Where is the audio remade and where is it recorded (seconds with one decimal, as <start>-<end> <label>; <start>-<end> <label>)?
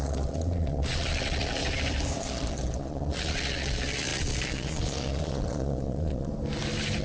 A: 0.0-1.6 remade; 1.6-2.2 recorded; 2.2-6.3 remade; 6.3-7.0 recorded